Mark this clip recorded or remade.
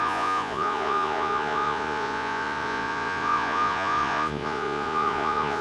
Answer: remade